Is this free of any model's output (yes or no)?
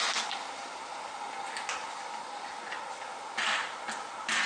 yes